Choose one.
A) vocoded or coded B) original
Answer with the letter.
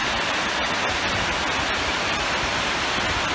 B